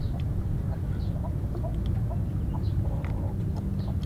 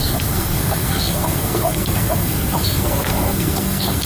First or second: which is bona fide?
first